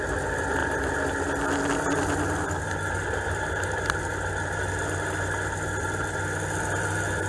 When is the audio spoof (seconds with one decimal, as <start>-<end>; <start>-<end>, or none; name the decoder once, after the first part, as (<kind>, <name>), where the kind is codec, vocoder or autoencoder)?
none